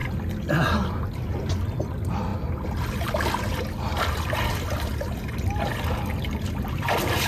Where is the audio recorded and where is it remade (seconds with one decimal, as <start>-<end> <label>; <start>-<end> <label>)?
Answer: 0.0-7.3 recorded